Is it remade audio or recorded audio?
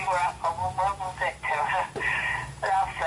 recorded